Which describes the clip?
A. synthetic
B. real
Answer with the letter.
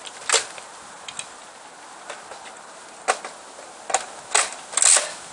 B